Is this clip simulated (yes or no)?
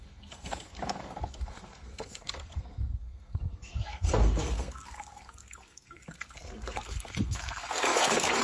yes